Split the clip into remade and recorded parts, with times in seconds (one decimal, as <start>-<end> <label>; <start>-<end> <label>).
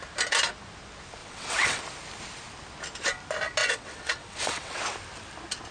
0.0-1.2 recorded; 1.2-1.8 remade; 1.8-3.6 recorded; 3.6-4.8 remade; 4.8-5.7 recorded